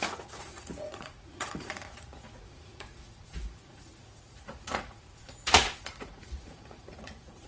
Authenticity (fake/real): fake